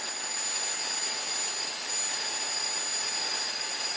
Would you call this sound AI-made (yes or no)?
no